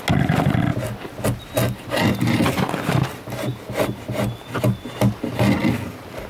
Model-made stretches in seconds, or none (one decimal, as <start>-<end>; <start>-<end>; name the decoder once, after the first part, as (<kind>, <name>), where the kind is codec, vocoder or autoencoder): none